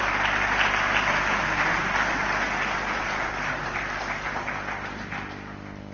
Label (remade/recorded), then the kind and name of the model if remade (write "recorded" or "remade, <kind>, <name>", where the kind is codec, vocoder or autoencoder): recorded